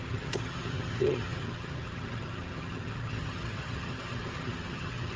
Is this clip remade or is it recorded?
remade